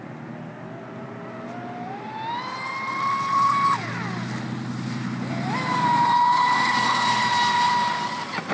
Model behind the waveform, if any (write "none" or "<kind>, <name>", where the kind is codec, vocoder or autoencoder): none